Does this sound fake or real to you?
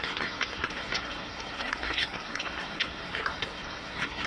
fake